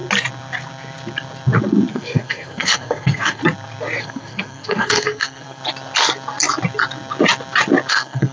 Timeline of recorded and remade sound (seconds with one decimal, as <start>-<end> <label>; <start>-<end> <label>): 0.0-1.9 recorded; 1.9-3.4 remade; 3.4-4.0 recorded; 4.0-5.6 remade; 5.6-7.9 recorded; 7.9-8.3 remade